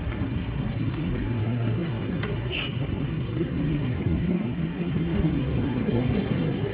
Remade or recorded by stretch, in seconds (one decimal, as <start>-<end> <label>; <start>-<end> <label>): 0.0-6.7 remade